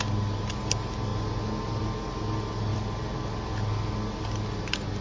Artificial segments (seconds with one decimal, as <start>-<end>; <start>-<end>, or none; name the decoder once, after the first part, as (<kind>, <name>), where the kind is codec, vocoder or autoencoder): 2.7-3.3 (vocoder, BigVGAN v2)